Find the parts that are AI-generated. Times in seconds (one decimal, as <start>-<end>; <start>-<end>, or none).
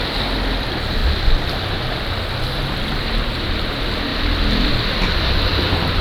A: none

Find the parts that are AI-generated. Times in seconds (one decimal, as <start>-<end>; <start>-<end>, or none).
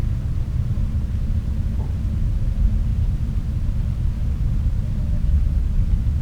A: 0.0-1.5; 2.9-4.0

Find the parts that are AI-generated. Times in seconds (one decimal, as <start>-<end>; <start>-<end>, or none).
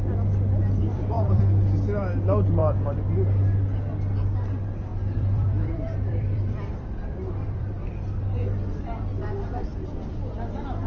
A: 0.8-1.4; 2.6-3.1; 4.9-8.8; 9.7-10.3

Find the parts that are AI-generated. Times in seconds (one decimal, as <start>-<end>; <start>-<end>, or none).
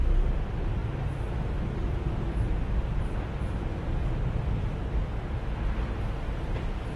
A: 0.0-7.0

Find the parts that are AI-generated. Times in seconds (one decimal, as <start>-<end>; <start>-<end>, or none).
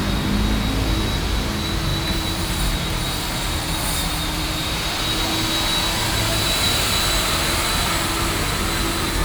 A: 1.9-5.0; 6.3-7.0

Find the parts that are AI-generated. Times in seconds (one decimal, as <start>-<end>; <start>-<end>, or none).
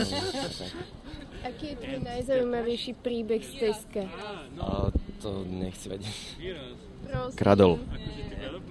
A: none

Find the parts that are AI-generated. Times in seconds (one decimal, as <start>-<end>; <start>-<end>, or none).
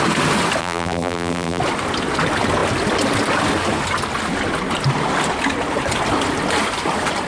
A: 0.6-1.6